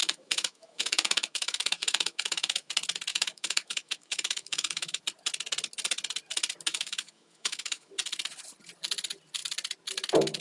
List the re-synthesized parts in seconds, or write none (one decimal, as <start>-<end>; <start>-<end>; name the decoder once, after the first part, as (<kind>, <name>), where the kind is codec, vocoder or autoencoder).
0.0-2.7 (autoencoder, DAC-VAE); 3.1-5.0; 6.7-7.9